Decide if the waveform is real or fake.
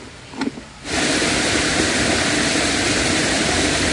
real